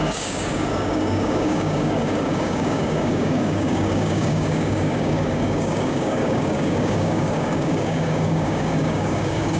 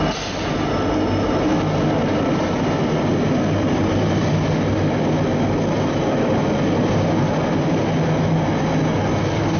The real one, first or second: second